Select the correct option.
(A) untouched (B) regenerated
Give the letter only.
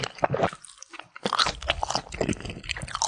A